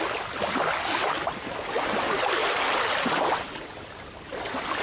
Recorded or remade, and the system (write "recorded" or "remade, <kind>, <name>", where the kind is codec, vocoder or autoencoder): recorded